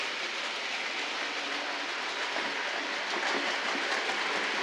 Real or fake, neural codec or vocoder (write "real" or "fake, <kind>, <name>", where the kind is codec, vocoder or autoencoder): real